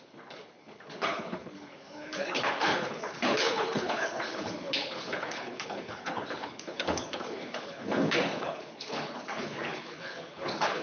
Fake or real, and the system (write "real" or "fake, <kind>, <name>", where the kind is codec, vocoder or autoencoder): fake, codec, HILCodec